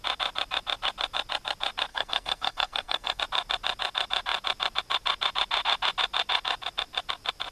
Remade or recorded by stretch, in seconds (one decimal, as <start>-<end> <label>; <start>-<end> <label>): 0.0-1.9 recorded; 1.9-3.2 remade; 3.2-7.5 recorded